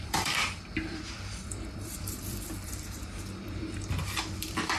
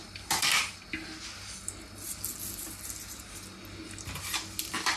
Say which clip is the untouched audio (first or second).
second